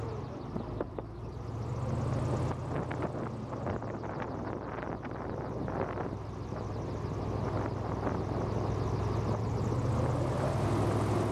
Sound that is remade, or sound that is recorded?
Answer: recorded